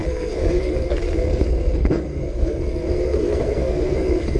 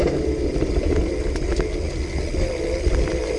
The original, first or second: second